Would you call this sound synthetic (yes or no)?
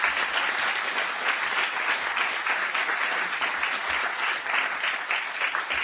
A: no